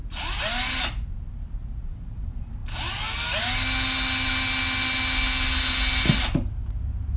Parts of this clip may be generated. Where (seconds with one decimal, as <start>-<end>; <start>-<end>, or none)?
none